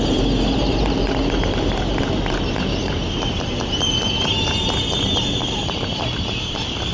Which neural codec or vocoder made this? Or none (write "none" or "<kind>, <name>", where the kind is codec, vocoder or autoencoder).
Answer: vocoder, BigVGAN v2